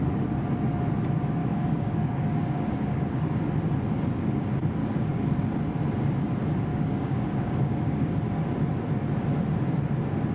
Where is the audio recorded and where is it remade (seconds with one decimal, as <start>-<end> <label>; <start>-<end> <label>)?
0.0-1.4 recorded; 1.4-3.4 remade; 3.4-4.8 recorded; 4.8-5.4 remade; 5.4-6.7 recorded; 6.7-8.4 remade; 8.4-10.3 recorded